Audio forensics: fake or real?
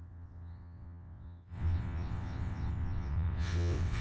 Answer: fake